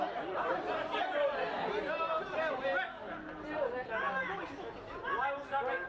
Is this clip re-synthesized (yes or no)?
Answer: no